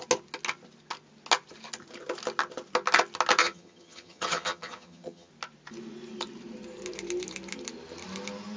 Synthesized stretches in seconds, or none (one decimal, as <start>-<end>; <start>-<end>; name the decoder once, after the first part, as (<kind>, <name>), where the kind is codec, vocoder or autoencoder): 3.4-5.3 (vocoder, HiFi-GAN)